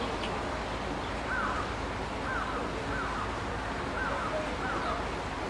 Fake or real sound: real